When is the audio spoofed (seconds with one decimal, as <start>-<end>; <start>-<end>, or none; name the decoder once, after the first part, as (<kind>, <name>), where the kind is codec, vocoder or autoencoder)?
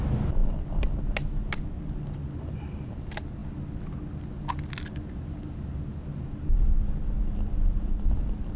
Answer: none